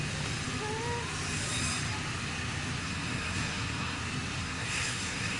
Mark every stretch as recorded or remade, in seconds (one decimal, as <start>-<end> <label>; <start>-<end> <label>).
0.0-2.8 recorded; 2.8-4.0 remade; 4.0-4.4 recorded; 4.4-5.4 remade

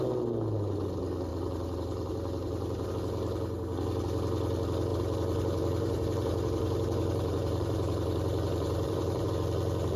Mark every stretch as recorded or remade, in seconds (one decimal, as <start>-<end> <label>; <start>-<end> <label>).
0.0-1.3 recorded; 1.3-2.9 remade; 2.9-4.9 recorded; 4.9-9.3 remade; 9.3-10.0 recorded

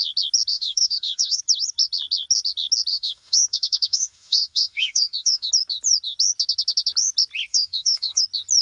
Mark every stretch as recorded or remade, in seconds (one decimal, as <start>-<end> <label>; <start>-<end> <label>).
0.0-0.5 recorded; 0.5-1.4 remade; 1.4-2.9 recorded; 2.9-5.5 remade; 5.5-7.5 recorded; 7.5-8.2 remade; 8.2-8.6 recorded